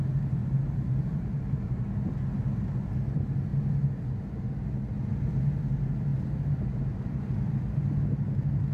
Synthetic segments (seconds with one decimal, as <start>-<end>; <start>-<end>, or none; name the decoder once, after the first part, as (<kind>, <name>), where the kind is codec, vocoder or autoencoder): 0.4-1.9 (vocoder, BigVGAN v2); 6.1-7.3